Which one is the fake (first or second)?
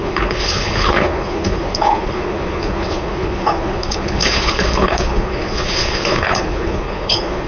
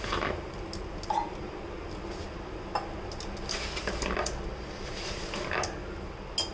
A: first